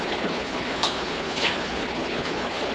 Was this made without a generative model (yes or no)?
no